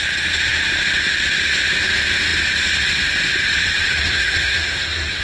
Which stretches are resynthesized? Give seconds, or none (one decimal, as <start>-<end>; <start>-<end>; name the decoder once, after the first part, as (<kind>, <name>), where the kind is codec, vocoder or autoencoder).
3.9-5.2 (codec, SNAC)